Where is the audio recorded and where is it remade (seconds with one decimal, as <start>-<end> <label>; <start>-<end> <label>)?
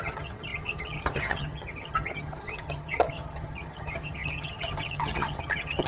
0.0-5.9 remade